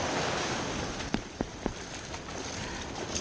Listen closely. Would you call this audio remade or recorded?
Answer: recorded